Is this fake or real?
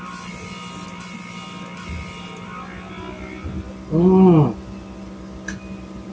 real